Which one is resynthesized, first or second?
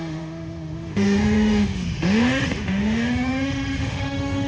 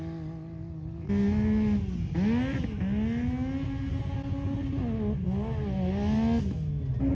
first